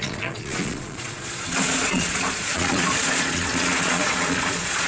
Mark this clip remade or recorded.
remade